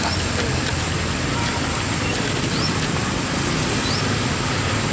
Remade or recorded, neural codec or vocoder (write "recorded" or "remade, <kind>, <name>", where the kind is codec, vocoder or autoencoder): recorded